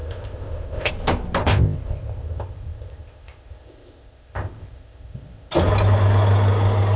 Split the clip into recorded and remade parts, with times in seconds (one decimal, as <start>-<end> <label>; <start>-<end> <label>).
0.0-0.9 remade; 0.9-1.4 recorded; 1.4-5.5 remade; 5.5-7.0 recorded